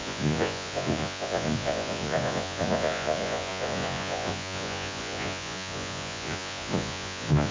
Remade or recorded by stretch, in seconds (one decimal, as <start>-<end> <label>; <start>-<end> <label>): 0.0-7.5 remade